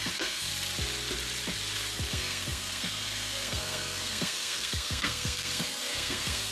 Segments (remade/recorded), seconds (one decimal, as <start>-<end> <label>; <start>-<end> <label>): 0.0-0.5 remade; 0.5-2.1 recorded; 2.1-6.5 remade